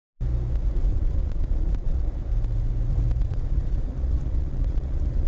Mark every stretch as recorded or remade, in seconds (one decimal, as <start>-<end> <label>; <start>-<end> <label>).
0.0-0.9 recorded; 0.9-2.2 remade; 2.2-3.2 recorded; 3.2-5.3 remade